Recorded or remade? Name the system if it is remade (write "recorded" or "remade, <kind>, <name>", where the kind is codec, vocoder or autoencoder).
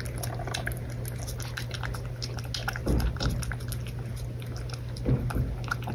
recorded